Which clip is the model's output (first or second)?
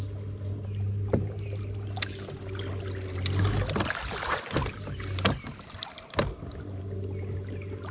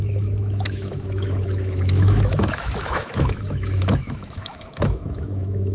second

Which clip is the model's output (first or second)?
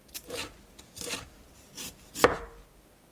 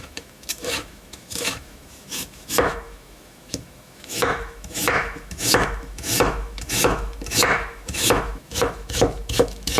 second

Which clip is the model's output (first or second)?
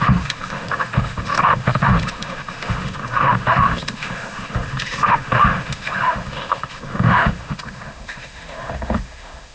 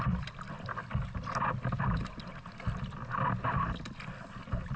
first